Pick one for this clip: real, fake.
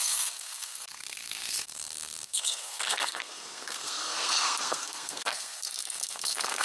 fake